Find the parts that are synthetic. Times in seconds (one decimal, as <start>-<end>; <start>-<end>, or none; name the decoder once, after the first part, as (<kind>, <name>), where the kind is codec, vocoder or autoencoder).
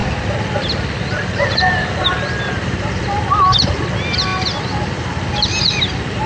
none